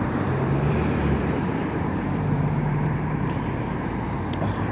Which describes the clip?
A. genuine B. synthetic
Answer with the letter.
B